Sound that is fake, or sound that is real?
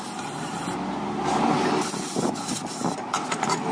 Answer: real